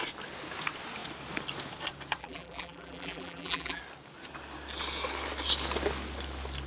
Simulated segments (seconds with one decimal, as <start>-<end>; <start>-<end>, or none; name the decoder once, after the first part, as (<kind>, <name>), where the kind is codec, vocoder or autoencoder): 2.2-3.8 (vocoder, BigVGAN v2)